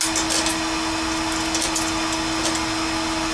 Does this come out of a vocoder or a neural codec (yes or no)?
no